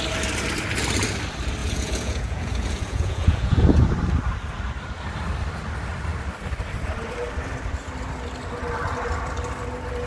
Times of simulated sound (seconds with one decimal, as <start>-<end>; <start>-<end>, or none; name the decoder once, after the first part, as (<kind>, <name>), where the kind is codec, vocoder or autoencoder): 1.6-3.9 (vocoder, Vocos)